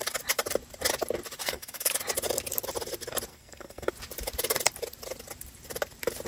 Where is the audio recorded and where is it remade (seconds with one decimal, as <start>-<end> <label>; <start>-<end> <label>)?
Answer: 0.0-1.4 recorded; 1.4-1.9 remade; 1.9-3.3 recorded; 3.3-3.9 remade; 3.9-6.3 recorded